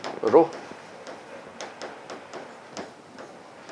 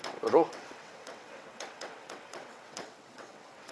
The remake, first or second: second